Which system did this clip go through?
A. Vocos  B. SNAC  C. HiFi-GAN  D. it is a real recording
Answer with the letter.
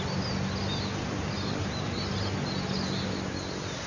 D